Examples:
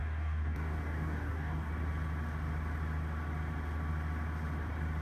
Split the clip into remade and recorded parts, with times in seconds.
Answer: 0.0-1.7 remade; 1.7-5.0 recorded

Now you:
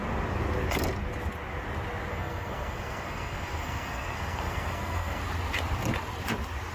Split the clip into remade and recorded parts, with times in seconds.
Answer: 0.0-2.1 recorded; 2.1-5.2 remade; 5.2-6.7 recorded

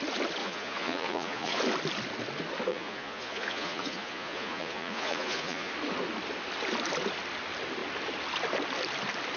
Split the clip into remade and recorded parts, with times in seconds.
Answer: 0.0-0.4 recorded; 0.4-1.6 remade; 1.6-2.7 recorded; 2.7-5.7 remade; 5.7-9.4 recorded

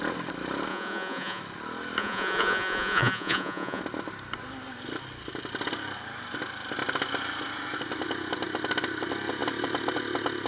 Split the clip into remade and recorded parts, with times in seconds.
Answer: 0.0-0.7 recorded; 0.7-1.4 remade; 1.4-2.0 recorded; 2.0-3.8 remade; 3.8-10.5 recorded

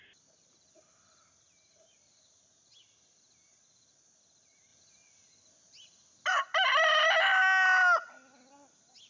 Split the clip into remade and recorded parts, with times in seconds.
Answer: 0.0-9.1 recorded

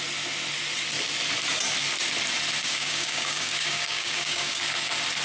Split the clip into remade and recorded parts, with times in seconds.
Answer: 0.0-2.6 recorded; 2.6-4.6 remade; 4.6-5.2 recorded

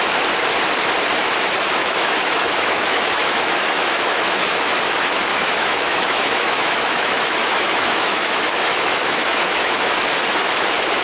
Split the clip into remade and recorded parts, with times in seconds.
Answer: 0.0-1.8 recorded; 1.8-4.8 remade; 4.8-5.3 recorded; 5.3-9.8 remade; 9.8-11.0 recorded

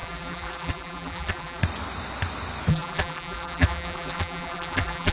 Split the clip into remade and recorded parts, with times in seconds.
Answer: 0.0-1.6 remade; 1.6-2.7 recorded; 2.7-5.1 remade